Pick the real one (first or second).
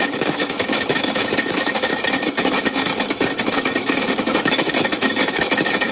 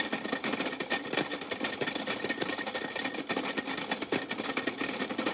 second